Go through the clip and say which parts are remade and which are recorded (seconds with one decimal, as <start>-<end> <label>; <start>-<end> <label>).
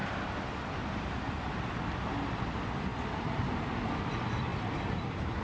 0.0-2.4 remade; 2.4-2.9 recorded; 2.9-3.5 remade; 3.5-4.5 recorded; 4.5-5.4 remade